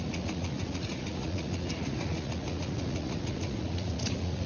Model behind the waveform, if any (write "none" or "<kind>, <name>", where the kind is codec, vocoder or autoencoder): vocoder, Vocos